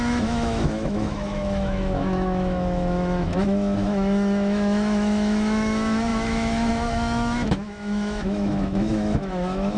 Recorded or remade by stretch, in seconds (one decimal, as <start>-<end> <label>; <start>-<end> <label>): 0.0-9.8 remade